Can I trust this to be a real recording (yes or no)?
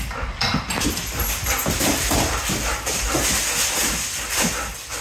yes